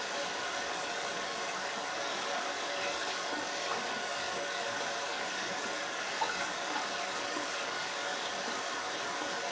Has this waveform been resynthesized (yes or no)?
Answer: yes